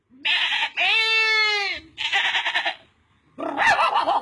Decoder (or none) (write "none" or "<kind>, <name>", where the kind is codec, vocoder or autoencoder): none